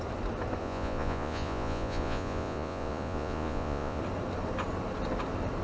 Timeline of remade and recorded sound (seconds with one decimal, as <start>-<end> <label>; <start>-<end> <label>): 0.0-0.6 recorded; 0.6-4.0 remade; 4.0-5.6 recorded